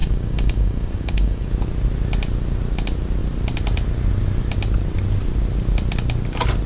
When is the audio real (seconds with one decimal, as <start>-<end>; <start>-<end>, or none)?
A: 1.5-6.7